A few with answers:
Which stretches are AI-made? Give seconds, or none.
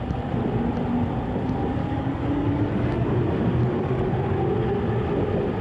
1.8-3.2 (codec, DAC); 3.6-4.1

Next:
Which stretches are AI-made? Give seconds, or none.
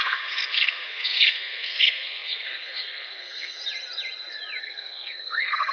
0.0-3.6 (codec, SNAC); 4.6-5.7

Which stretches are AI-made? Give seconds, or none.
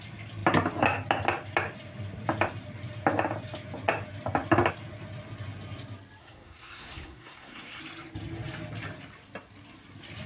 6.2-7.8 (codec, SNAC)